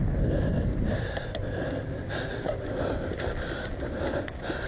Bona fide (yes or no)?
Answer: yes